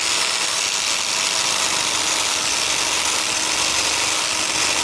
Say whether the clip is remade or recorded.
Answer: recorded